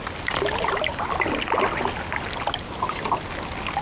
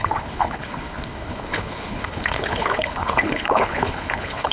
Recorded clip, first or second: first